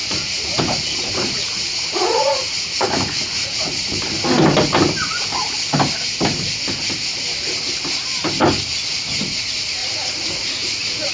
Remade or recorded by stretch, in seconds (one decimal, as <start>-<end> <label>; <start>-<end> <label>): 0.0-4.0 remade; 4.0-9.8 recorded; 9.8-11.1 remade